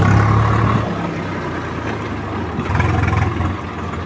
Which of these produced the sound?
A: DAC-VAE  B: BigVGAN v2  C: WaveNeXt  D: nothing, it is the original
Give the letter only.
D